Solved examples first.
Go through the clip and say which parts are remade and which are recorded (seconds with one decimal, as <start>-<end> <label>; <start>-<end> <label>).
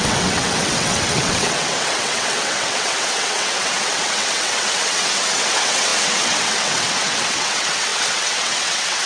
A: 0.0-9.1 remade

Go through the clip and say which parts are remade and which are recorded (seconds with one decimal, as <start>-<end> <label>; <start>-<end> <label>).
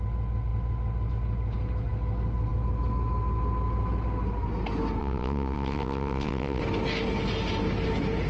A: 0.0-5.0 recorded; 5.0-6.6 remade; 6.6-8.3 recorded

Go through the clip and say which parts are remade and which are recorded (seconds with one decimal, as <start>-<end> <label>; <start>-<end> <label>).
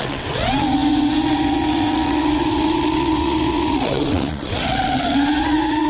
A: 0.0-5.9 remade